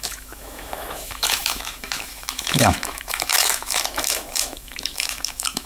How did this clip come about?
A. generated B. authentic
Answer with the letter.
A